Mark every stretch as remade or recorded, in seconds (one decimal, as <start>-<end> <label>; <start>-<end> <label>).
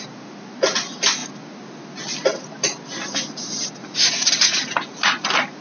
0.0-5.6 recorded